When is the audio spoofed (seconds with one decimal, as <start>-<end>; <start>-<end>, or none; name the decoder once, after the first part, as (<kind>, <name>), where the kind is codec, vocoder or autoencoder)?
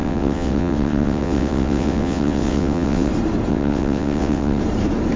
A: 0.0-3.1 (vocoder, WaveNeXt); 3.5-4.6